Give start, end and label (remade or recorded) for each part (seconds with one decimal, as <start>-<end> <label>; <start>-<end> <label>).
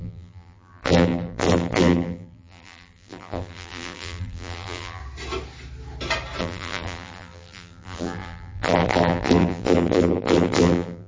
0.0-5.0 remade; 5.0-6.4 recorded; 6.4-11.1 remade